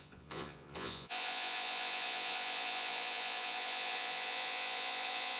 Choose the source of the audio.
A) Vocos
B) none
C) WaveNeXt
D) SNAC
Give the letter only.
A